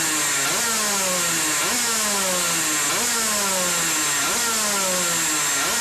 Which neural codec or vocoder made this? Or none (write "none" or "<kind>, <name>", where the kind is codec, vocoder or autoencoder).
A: none